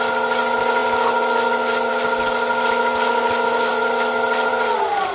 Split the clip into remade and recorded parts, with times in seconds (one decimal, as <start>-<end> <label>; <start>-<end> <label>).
0.0-5.1 recorded